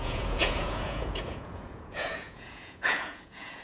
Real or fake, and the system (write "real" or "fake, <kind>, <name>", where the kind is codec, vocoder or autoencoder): fake, vocoder, Vocos